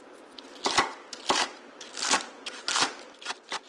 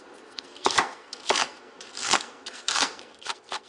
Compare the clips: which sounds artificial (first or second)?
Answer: second